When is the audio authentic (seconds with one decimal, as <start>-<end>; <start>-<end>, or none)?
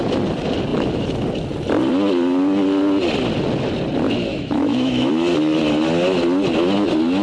0.0-4.3; 5.1-7.2